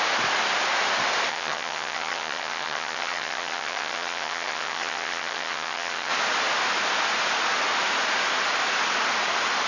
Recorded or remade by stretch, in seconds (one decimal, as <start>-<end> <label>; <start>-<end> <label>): 0.0-1.3 recorded; 1.3-6.1 remade; 6.1-9.7 recorded